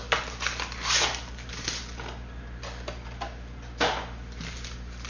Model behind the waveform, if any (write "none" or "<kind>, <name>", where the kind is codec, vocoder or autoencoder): none